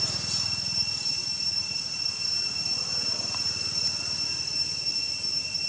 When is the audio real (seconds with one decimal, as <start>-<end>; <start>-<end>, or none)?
0.0-5.7